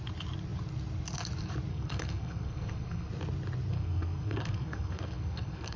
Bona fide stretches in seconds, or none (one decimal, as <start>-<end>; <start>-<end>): 0.0-1.7; 3.1-3.7